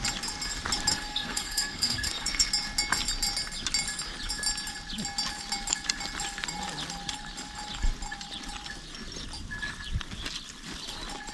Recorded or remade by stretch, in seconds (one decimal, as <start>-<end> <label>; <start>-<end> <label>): 0.0-0.9 recorded; 0.9-2.5 remade; 2.5-11.3 recorded

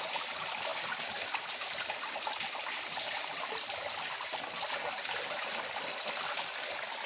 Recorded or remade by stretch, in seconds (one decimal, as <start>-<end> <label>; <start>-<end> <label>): 0.0-0.7 remade; 0.7-1.6 recorded; 1.6-7.1 remade

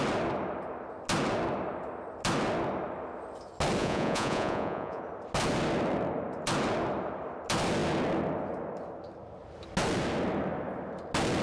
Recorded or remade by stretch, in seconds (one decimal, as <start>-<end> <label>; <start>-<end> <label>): 0.0-3.8 recorded; 3.8-5.0 remade; 5.0-11.4 recorded

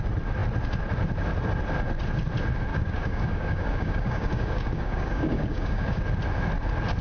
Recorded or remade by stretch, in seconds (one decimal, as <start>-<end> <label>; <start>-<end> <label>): 0.0-2.7 recorded; 2.7-6.0 remade; 6.0-7.0 recorded

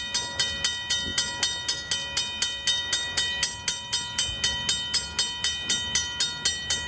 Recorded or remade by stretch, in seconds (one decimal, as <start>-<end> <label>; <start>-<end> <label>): 0.0-6.9 recorded

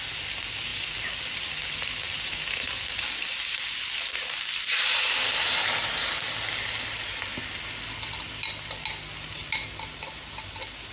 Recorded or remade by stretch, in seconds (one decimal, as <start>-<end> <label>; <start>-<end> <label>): 0.0-10.9 recorded

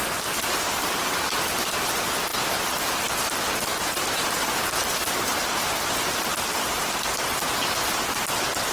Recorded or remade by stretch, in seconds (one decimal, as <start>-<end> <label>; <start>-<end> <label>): 0.0-1.9 remade; 1.9-2.3 recorded; 2.3-3.3 remade; 3.3-3.7 recorded; 3.7-6.9 remade; 6.9-8.7 recorded

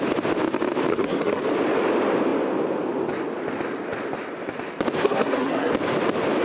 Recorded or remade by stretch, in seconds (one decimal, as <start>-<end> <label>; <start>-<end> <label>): 0.0-0.9 recorded; 0.9-1.4 remade; 1.4-5.0 recorded; 5.0-5.7 remade; 5.7-6.4 recorded